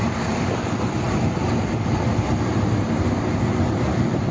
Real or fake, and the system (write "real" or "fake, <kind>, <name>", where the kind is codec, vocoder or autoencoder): fake, vocoder, BigVGAN v2